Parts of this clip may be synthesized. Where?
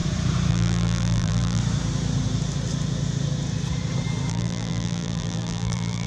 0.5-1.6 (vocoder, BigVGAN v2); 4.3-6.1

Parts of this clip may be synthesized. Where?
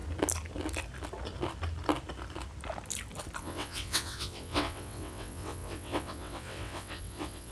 3.4-7.5 (vocoder, WaveNeXt)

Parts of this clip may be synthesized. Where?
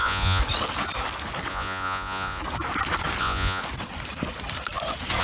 0.0-0.4 (vocoder, Vocos); 1.5-2.4; 3.2-3.6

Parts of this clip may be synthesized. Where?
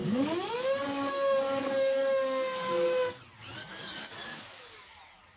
0.0-3.2 (codec, DAC); 3.6-5.0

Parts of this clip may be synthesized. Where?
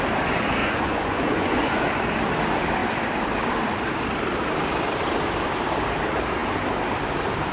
0.6-1.9 (vocoder, Vocos)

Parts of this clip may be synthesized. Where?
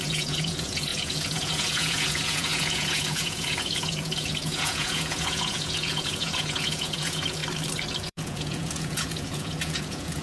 0.0-7.4 (vocoder, Vocos); 8.0-10.2